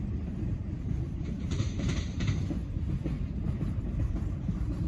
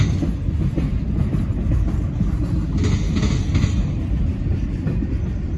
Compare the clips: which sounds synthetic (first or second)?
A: first